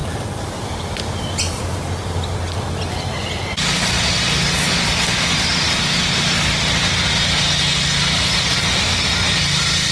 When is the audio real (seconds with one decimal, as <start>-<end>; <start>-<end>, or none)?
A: 0.0-9.9

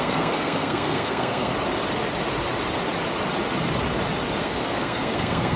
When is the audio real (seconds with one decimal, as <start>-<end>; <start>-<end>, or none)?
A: 1.5-4.4

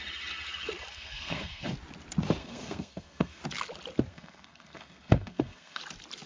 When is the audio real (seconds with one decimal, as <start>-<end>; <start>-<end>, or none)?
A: 0.0-0.9; 1.7-2.4; 3.4-4.1; 5.8-6.3

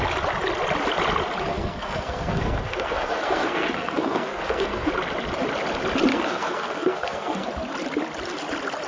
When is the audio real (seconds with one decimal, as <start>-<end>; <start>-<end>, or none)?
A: 0.0-1.5; 4.9-6.1; 7.5-8.9

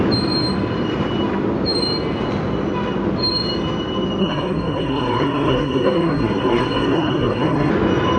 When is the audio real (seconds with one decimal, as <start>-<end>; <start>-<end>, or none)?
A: 0.0-4.2; 7.7-8.2